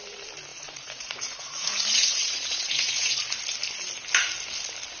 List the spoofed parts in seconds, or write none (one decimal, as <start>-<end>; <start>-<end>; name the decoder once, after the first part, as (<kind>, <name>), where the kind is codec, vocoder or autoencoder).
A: 0.5-3.2 (vocoder, Vocos)